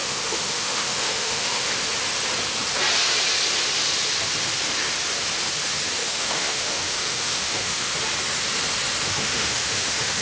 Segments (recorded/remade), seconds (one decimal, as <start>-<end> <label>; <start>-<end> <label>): 0.0-1.7 remade; 1.7-6.0 recorded; 6.0-7.9 remade; 7.9-9.0 recorded; 9.0-10.2 remade